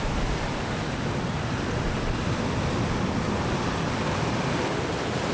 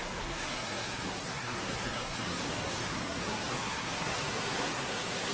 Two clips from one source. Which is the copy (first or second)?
second